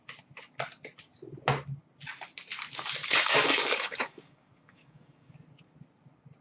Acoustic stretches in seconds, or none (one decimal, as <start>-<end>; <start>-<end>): 0.0-3.0; 5.3-6.4